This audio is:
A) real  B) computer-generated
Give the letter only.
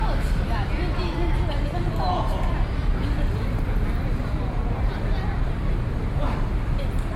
A